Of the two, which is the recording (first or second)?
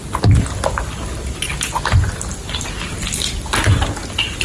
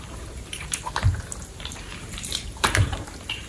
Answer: first